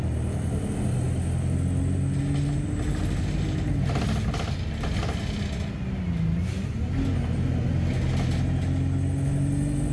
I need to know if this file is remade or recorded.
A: recorded